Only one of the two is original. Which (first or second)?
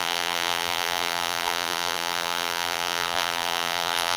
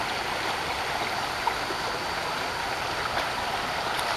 second